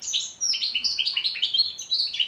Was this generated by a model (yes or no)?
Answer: yes